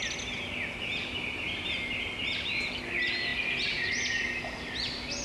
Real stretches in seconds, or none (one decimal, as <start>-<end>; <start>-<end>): 0.0-5.2